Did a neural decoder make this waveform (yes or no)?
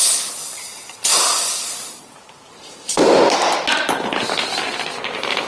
no